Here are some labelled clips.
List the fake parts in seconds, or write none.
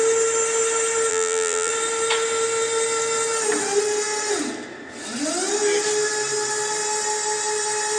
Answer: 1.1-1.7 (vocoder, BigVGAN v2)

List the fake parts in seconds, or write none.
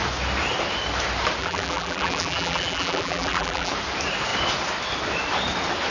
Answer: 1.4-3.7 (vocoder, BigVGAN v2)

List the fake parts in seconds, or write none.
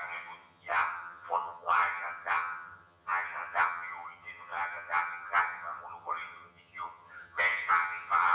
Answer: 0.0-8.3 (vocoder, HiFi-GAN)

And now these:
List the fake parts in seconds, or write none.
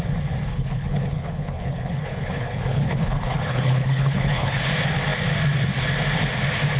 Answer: 0.5-4.6 (codec, HILCodec)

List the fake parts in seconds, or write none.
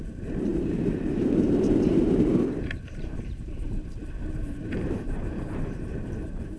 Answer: 0.0-6.6 (vocoder, BigVGAN v2)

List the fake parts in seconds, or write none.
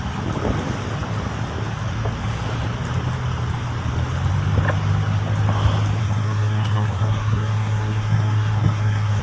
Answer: 6.0-9.2 (codec, SNAC)